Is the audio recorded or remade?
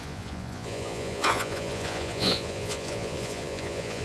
remade